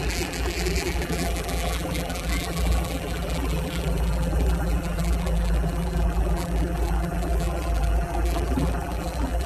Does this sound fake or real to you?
fake